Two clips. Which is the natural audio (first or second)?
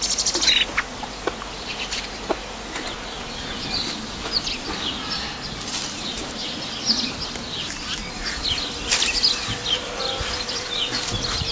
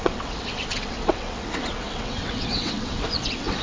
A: first